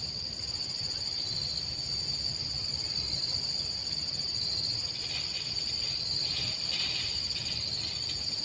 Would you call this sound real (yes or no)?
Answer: yes